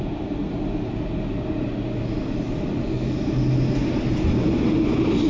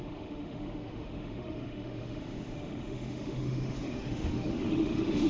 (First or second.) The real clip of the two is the first